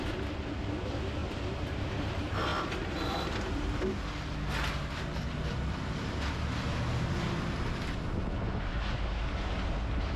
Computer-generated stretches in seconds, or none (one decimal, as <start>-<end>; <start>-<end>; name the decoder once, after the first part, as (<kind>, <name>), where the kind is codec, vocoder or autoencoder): 1.2-2.1 (vocoder, BigVGAN v2); 2.5-3.7